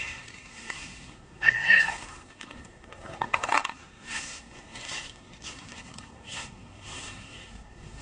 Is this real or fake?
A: fake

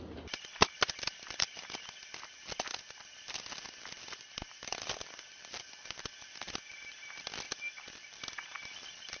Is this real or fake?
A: real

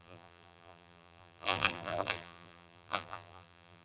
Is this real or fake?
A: fake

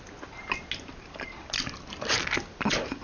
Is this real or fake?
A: real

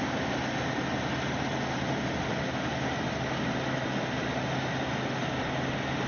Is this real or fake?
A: real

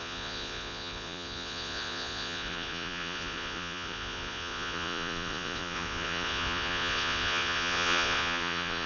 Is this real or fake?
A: fake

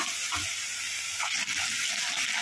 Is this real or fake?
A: real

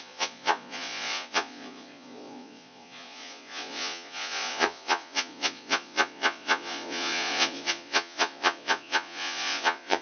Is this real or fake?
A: fake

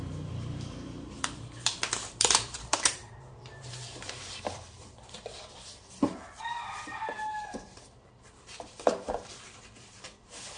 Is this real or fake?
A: fake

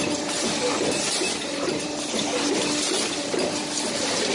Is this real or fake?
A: real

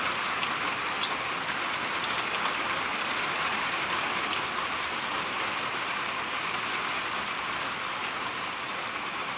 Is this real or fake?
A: real